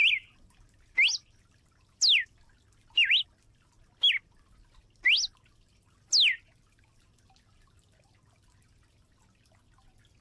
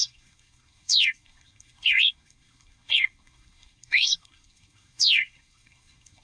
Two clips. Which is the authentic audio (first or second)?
first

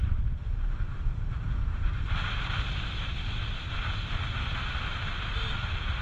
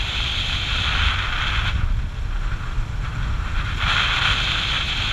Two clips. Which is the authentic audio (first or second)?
second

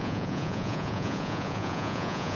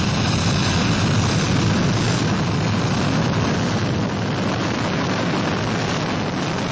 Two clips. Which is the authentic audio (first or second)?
second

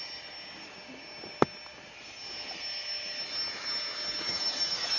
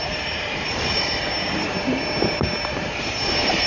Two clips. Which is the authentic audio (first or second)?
first